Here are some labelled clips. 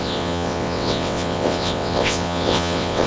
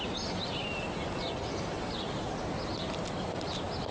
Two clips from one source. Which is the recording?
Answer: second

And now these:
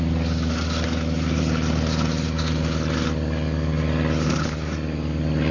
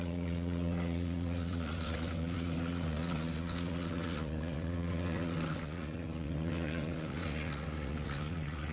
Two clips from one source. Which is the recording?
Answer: first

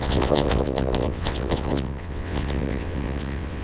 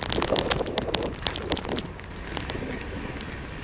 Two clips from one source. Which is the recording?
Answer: second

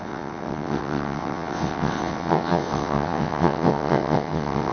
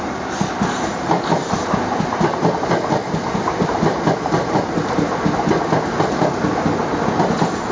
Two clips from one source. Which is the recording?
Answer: second